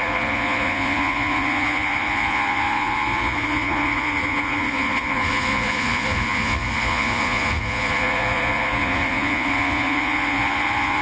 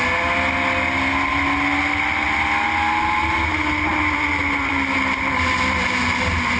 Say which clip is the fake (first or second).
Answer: first